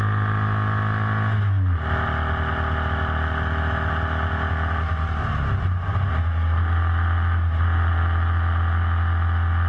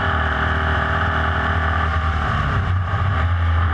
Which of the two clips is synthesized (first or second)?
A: second